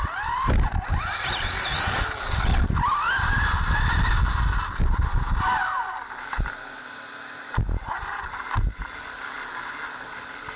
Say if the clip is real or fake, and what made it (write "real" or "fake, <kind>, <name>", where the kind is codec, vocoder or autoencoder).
real